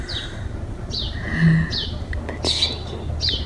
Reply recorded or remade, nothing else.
recorded